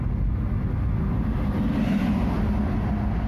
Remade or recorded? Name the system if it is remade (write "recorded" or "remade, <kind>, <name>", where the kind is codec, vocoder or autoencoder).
recorded